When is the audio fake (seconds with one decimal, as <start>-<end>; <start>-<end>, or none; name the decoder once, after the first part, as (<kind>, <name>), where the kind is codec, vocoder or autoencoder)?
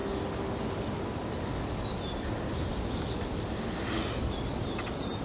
none